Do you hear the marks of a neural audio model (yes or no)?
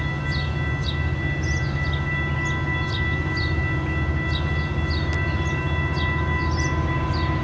no